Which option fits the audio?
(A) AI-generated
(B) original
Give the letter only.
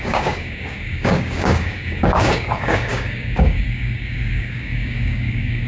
A